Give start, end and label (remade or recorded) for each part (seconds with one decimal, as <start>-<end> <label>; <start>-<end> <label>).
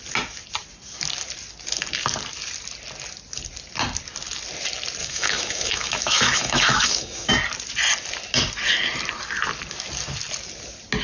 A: 0.0-5.0 recorded; 5.0-7.3 remade; 7.3-11.0 recorded